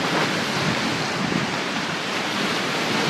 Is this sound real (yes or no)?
yes